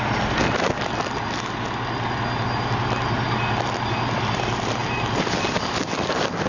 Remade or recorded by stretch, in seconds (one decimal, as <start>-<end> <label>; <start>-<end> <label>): 0.0-6.5 recorded